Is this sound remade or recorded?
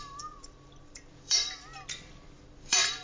remade